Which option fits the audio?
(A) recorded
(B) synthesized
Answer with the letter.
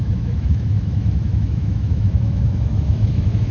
B